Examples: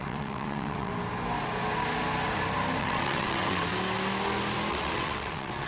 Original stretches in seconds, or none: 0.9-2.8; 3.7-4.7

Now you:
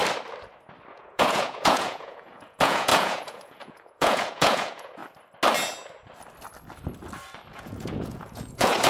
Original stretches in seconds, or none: 0.0-0.9; 5.0-7.5

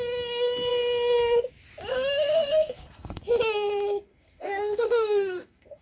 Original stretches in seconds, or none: 0.0-1.9; 3.2-4.1

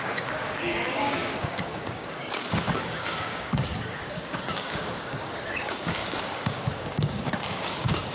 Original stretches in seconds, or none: none

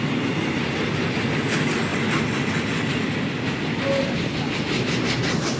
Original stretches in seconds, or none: 0.0-5.6